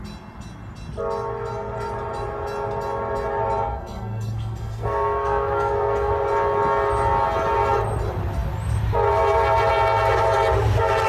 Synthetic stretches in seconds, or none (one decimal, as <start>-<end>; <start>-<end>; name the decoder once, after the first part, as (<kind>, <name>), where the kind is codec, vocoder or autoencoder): 3.7-6.1 (codec, SNAC)